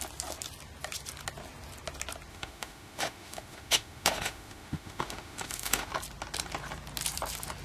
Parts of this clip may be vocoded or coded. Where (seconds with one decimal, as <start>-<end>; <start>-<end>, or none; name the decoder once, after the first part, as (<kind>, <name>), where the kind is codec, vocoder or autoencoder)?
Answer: 2.3-5.9 (autoencoder, DAC-VAE)